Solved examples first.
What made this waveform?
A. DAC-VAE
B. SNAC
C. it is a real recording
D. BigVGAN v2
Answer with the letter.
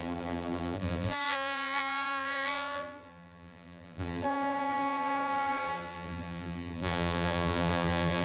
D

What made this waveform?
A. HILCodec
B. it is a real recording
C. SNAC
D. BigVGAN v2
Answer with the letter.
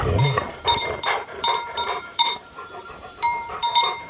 D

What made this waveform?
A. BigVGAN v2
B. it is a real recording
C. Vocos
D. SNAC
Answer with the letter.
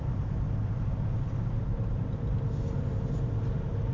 A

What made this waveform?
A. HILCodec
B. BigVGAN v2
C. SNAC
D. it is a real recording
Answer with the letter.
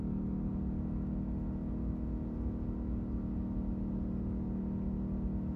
D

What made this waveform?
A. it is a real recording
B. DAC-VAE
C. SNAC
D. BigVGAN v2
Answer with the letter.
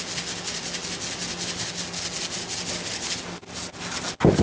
A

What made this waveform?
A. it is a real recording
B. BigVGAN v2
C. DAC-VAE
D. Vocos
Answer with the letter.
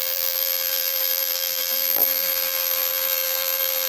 B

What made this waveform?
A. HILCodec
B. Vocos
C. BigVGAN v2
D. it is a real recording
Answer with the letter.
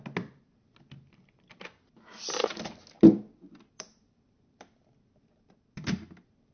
D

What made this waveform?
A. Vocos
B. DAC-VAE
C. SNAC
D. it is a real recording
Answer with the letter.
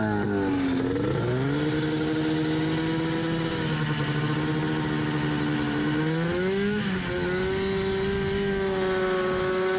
D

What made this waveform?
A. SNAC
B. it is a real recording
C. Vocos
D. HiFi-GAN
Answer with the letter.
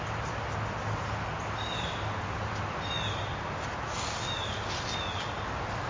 B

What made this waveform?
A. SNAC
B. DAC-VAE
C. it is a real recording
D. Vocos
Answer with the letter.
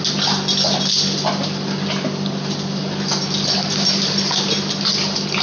C